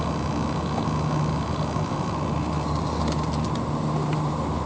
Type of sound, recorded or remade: recorded